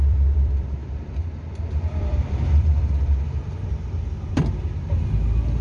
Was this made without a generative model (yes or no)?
no